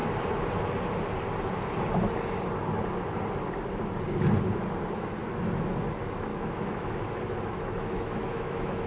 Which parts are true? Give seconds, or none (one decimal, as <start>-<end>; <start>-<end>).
0.0-6.3